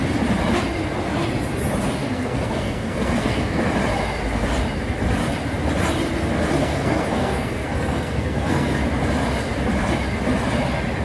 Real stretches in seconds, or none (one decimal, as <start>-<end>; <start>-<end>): 0.0-2.0; 3.6-6.6; 8.8-11.0